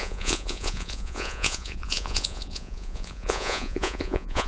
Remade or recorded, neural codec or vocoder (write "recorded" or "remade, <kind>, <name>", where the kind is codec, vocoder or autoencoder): remade, vocoder, Vocos